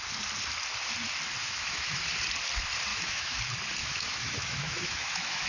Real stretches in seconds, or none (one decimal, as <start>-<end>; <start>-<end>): 0.0-1.4; 2.1-2.9; 3.4-3.8